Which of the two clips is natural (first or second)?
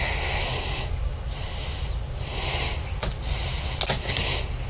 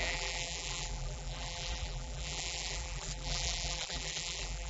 first